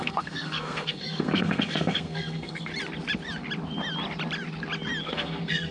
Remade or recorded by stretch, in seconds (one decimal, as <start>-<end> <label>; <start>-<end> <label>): 0.0-2.7 remade; 2.7-5.0 recorded; 5.0-5.7 remade